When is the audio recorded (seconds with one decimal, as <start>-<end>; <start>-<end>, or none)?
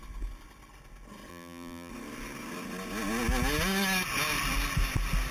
0.0-1.3; 1.9-5.3